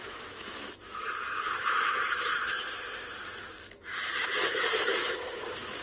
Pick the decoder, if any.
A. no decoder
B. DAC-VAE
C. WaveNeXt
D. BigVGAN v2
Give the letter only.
B